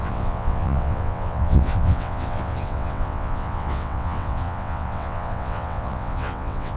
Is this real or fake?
fake